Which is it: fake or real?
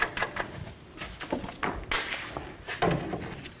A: real